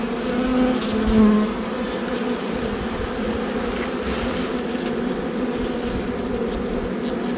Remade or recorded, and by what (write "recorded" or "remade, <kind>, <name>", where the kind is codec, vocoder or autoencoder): recorded